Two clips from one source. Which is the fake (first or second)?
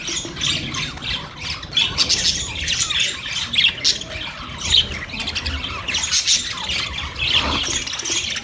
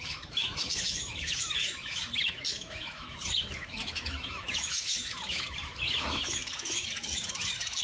second